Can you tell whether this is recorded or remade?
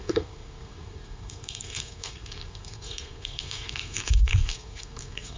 remade